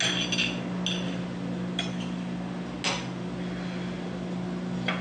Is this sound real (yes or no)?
yes